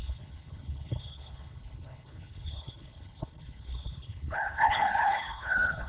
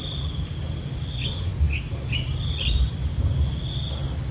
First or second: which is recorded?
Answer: second